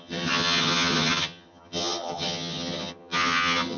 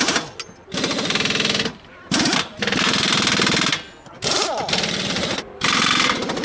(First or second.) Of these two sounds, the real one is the second